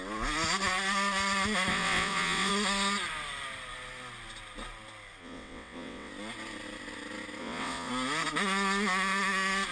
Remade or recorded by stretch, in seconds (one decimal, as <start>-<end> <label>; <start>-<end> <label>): 0.0-1.7 recorded; 1.7-2.5 remade; 2.5-5.2 recorded; 5.2-6.1 remade; 6.1-7.4 recorded; 7.4-7.9 remade; 7.9-9.7 recorded

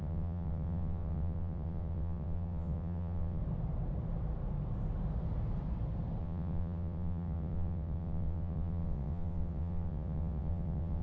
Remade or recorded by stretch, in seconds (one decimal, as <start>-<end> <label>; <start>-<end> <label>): 0.0-3.4 remade; 3.4-6.2 recorded; 6.2-11.0 remade

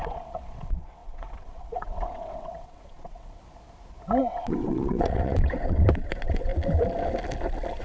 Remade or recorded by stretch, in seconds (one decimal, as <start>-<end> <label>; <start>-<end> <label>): 0.0-3.4 remade; 3.4-4.2 recorded; 4.2-6.5 remade; 6.5-7.8 recorded

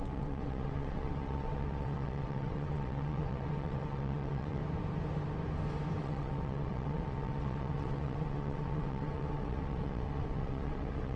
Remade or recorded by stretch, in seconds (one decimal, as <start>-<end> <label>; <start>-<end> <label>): 0.0-4.6 remade; 4.6-6.0 recorded; 6.0-11.2 remade

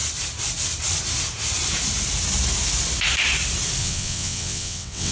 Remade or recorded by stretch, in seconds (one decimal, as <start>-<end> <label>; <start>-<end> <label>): 0.0-3.8 recorded; 3.8-5.1 remade